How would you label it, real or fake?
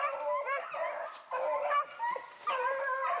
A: real